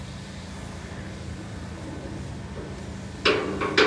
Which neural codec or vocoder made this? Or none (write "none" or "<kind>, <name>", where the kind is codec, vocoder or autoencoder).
none